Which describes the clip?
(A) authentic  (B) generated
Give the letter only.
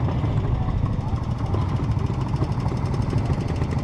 A